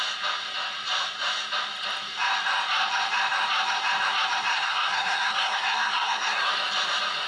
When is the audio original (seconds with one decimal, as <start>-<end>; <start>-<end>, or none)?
0.0-4.5; 6.5-7.3